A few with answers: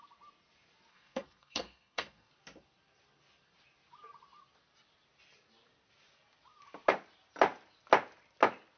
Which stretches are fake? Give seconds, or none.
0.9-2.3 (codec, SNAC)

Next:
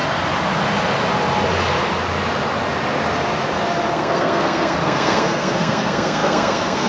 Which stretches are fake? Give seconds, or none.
3.9-6.9 (codec, SNAC)

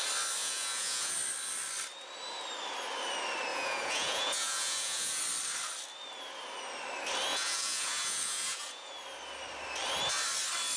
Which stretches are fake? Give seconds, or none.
0.4-1.1 (vocoder, Vocos); 3.5-5.2; 7.3-8.9

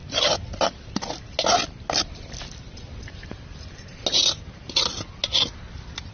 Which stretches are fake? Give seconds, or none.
none

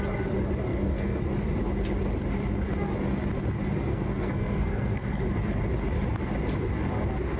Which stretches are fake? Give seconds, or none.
0.7-1.2 (codec, SNAC); 3.9-5.2